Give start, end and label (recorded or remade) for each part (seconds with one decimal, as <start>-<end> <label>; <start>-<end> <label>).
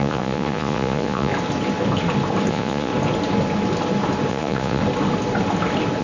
0.0-1.3 remade; 1.3-2.5 recorded; 2.5-2.9 remade; 2.9-4.3 recorded; 4.3-4.8 remade; 4.8-6.0 recorded